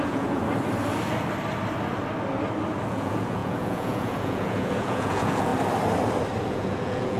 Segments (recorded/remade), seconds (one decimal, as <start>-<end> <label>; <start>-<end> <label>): 0.0-0.4 remade; 0.4-2.9 recorded; 2.9-5.5 remade; 5.5-6.5 recorded; 6.5-7.2 remade